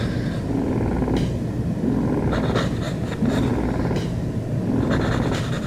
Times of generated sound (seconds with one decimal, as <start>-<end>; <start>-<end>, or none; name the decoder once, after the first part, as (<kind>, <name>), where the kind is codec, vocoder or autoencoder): none